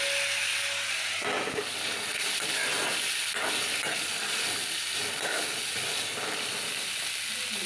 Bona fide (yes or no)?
yes